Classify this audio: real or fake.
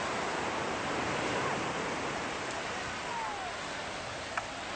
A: real